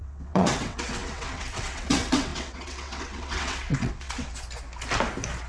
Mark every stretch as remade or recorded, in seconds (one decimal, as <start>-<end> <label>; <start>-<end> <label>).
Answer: 0.0-4.3 remade; 4.3-5.5 recorded